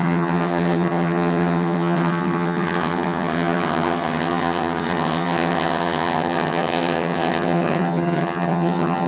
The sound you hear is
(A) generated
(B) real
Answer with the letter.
A